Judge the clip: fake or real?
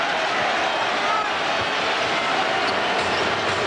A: real